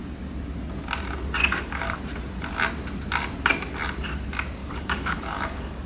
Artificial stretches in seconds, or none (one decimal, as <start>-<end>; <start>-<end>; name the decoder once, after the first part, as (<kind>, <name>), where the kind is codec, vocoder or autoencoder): 1.4-2.0 (codec, DAC); 4.6-5.9